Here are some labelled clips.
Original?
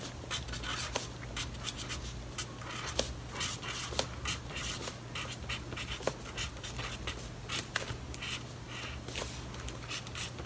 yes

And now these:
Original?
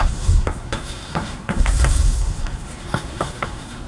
no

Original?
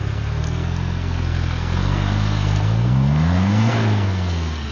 no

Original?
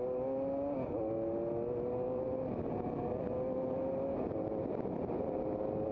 yes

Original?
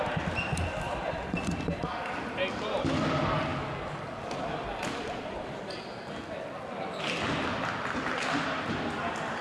yes